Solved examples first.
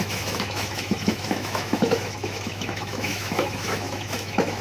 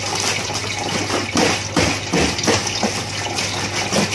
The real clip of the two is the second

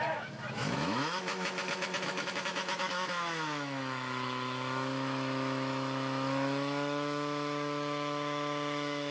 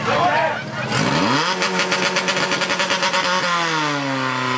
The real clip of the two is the second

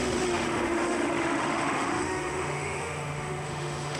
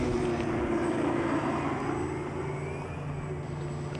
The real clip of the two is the second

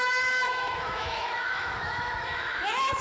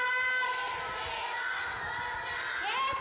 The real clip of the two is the second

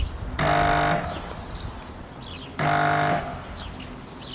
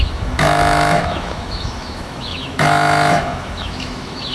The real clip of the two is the first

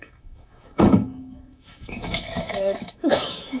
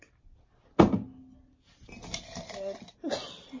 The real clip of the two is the second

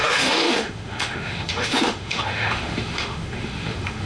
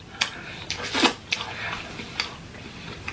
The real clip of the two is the second